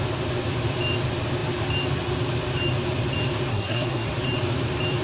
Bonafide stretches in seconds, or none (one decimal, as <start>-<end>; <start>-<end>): 0.0-3.5; 4.1-5.0